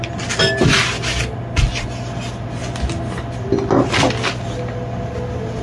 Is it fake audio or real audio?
real